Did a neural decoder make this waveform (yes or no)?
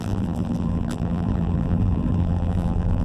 yes